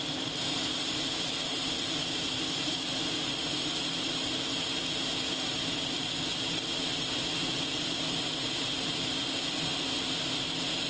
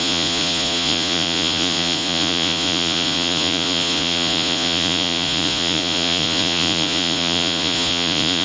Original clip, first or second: first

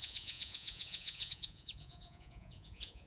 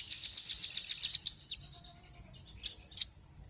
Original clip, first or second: second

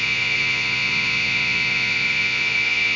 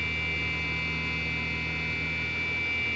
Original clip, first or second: second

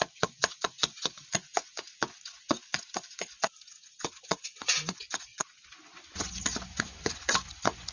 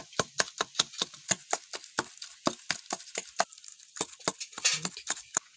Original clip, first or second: second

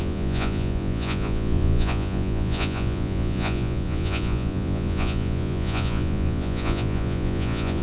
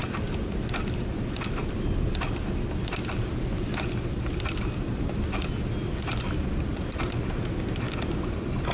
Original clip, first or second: second